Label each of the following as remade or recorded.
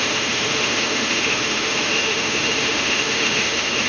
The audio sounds remade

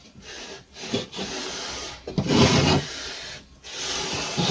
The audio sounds recorded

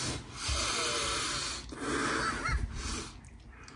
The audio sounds recorded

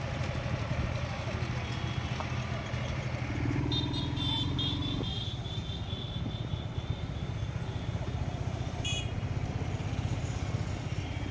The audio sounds recorded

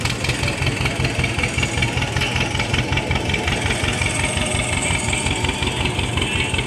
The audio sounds recorded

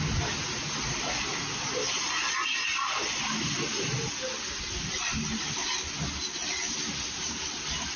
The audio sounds recorded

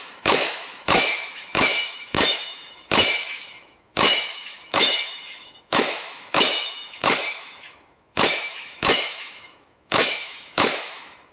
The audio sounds remade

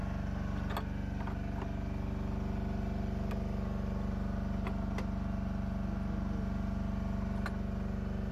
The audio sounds recorded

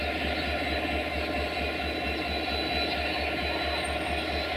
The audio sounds recorded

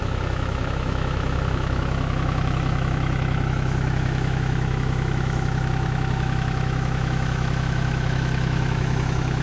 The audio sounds remade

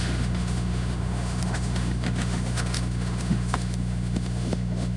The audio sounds remade